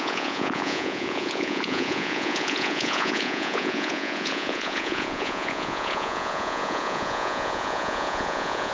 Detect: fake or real fake